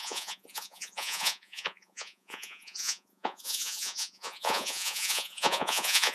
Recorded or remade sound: remade